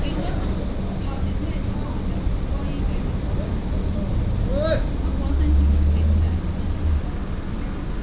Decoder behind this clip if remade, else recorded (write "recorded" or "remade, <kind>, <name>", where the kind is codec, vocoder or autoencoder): recorded